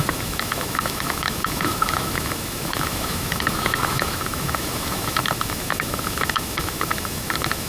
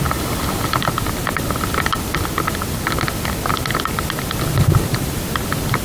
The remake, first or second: first